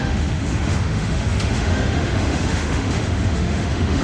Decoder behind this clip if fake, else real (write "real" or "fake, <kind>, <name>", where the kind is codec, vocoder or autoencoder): fake, autoencoder, DAC-VAE